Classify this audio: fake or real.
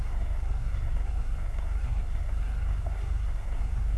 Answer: fake